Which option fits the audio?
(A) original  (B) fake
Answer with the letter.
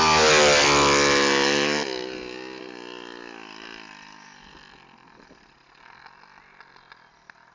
A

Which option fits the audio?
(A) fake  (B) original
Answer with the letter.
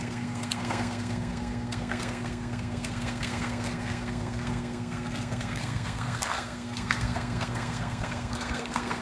A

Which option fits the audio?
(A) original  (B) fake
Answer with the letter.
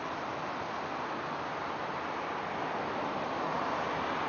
A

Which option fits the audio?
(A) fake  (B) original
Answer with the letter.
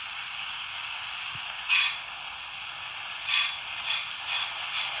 B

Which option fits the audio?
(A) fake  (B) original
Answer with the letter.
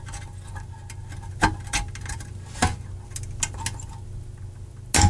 B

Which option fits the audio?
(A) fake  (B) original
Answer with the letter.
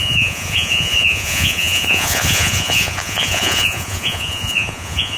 A